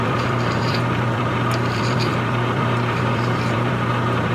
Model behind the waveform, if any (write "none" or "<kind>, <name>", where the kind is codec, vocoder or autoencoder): vocoder, BigVGAN v2